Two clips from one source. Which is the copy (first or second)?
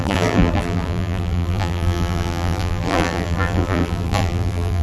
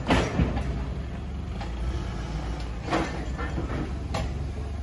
first